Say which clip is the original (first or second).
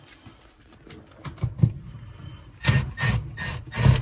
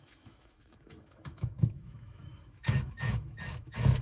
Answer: first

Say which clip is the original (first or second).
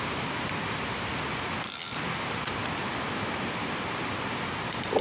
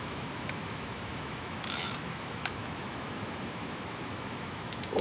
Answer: first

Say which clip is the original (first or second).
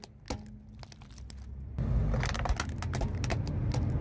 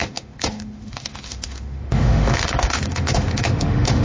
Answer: first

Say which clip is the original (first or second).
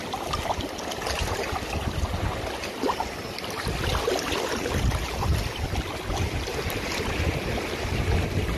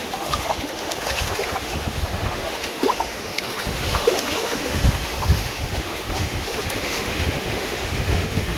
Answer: first